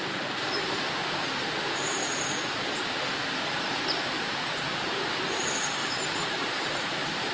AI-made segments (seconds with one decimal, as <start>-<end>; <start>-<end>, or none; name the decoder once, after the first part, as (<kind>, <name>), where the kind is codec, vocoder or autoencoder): 5.8-7.3 (vocoder, BigVGAN v2)